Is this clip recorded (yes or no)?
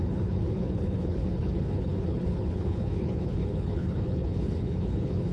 no